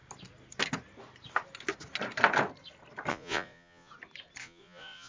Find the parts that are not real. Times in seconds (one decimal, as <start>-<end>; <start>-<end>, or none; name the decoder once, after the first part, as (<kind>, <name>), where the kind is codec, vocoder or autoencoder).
3.1-3.9 (vocoder, Vocos); 4.4-5.1